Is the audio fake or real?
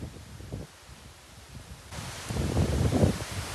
real